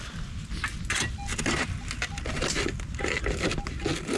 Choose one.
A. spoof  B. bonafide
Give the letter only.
B